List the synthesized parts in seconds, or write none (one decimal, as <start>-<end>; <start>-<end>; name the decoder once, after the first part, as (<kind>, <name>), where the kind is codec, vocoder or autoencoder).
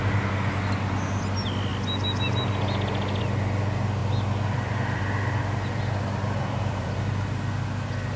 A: 4.0-7.0 (vocoder, BigVGAN v2)